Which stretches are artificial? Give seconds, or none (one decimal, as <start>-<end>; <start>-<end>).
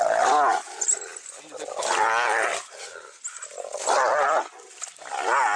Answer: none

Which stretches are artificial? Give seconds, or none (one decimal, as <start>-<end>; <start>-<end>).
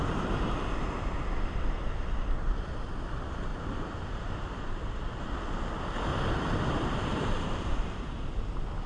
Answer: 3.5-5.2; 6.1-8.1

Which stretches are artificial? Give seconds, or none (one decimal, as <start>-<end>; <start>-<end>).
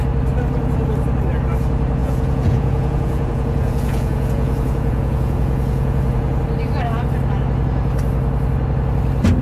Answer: 2.0-6.4